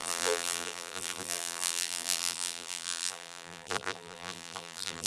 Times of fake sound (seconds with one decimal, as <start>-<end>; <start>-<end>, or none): 0.0-5.1

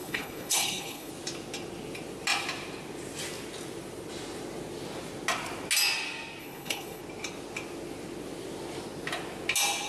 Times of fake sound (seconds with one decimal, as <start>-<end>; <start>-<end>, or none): 0.0-1.1; 6.4-7.0